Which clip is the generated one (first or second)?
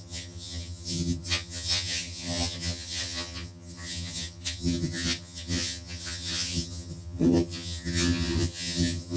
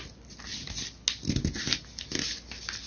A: first